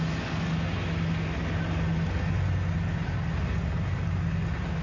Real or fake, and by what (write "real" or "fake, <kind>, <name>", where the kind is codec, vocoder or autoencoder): real